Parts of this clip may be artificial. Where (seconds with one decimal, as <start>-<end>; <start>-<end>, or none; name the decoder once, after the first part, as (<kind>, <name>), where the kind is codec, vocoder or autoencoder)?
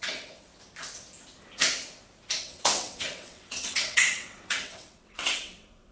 0.0-0.5 (vocoder, WaveNeXt); 2.4-5.9